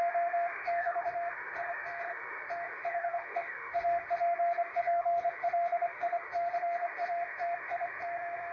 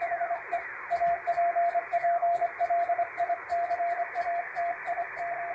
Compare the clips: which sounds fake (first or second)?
first